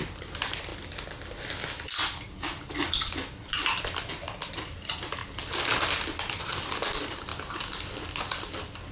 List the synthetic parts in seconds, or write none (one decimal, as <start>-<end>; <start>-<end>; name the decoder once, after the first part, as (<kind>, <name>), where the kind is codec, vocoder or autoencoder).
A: 0.0-0.7 (vocoder, BigVGAN v2); 2.7-5.2; 6.4-7.3; 8.3-8.9